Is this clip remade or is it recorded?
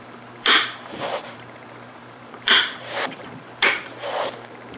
remade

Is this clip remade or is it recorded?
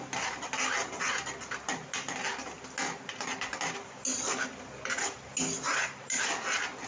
recorded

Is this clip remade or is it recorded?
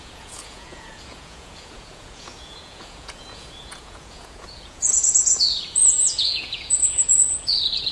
remade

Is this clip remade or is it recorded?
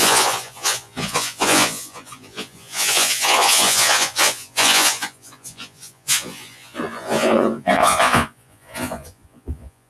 remade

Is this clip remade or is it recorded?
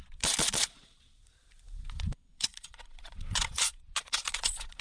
remade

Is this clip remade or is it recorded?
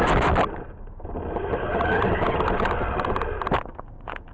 recorded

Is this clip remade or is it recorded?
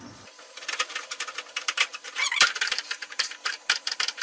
remade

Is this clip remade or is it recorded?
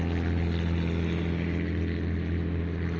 recorded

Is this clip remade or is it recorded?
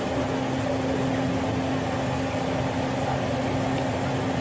recorded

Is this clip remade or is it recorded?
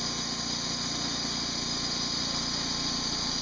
recorded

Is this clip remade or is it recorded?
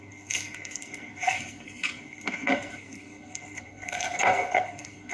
remade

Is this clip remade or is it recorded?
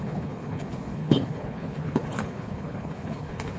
remade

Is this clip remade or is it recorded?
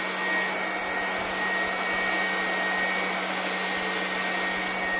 recorded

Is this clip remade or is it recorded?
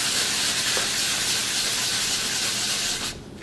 recorded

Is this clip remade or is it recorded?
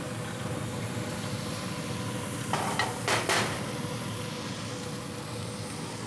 recorded